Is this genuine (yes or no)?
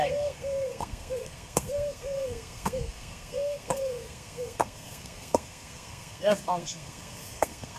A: no